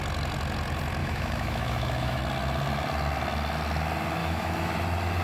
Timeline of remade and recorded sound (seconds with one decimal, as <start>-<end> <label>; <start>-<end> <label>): 0.0-1.0 recorded; 1.0-2.2 remade; 2.2-4.2 recorded; 4.2-4.7 remade; 4.7-5.2 recorded

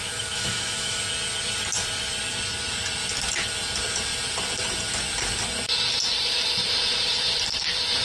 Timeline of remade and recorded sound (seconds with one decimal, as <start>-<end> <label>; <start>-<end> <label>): 0.0-1.0 remade; 1.0-8.0 recorded

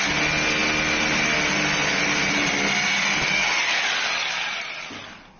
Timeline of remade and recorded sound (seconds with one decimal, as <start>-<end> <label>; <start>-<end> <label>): 0.0-5.4 recorded

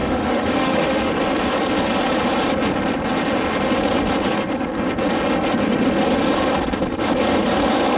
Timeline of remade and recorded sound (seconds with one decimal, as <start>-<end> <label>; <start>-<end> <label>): 0.0-1.1 remade; 1.1-8.0 recorded

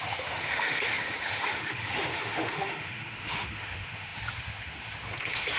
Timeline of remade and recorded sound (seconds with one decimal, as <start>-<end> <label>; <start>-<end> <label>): 0.0-5.6 remade

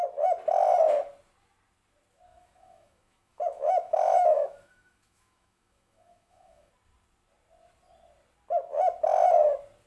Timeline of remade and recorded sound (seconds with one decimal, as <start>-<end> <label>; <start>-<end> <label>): 0.0-2.3 recorded; 2.3-6.7 remade; 6.7-9.9 recorded

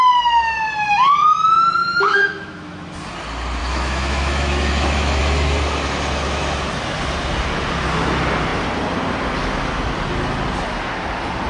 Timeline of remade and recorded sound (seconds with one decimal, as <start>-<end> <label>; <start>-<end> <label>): 0.0-1.8 recorded; 1.8-2.9 remade; 2.9-3.6 recorded; 3.6-5.2 remade; 5.2-11.5 recorded

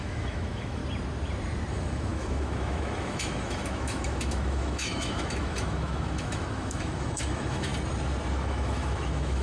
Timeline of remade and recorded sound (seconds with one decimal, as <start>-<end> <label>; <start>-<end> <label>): 0.0-0.8 remade; 0.8-1.7 recorded; 1.7-7.7 remade; 7.7-8.3 recorded; 8.3-9.4 remade